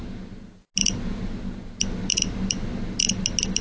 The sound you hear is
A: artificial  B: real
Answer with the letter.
B